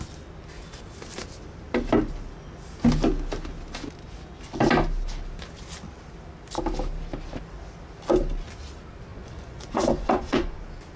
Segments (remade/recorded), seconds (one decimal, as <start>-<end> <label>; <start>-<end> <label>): 0.0-9.1 recorded; 9.1-10.6 remade; 10.6-11.0 recorded